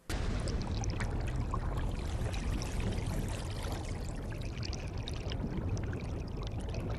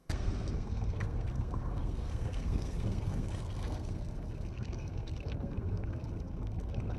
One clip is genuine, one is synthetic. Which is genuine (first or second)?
first